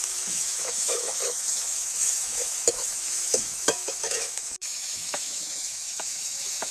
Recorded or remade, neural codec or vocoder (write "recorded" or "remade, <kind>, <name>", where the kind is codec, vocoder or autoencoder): remade, autoencoder, DAC-VAE